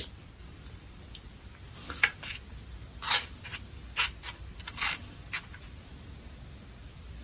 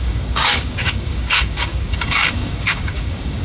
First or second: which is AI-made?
second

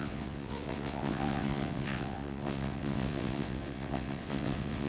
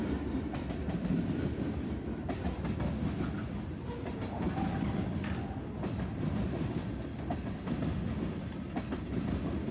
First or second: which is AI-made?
first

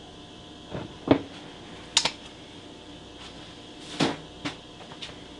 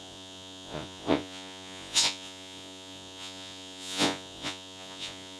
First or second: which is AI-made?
second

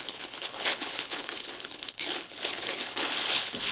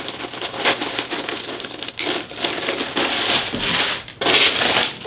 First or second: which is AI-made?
first